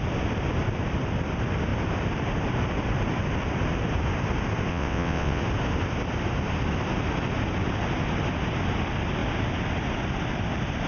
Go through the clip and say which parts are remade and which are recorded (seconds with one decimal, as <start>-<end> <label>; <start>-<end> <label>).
0.0-4.7 recorded; 4.7-5.4 remade; 5.4-10.9 recorded